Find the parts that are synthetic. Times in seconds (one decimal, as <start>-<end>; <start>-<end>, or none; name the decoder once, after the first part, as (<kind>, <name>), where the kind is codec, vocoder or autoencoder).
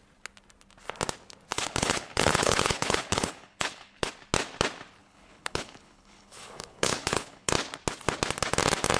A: 1.5-4.1 (codec, HILCodec); 5.0-7.5